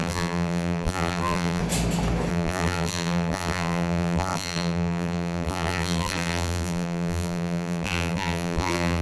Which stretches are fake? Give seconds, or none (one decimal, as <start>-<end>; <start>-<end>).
0.0-1.6; 2.3-9.0